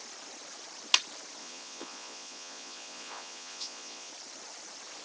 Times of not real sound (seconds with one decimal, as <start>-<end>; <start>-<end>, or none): 1.4-4.1